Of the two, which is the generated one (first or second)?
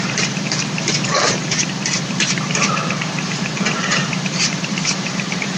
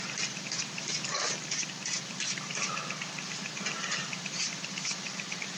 first